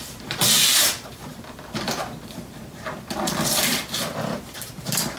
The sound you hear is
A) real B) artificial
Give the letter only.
B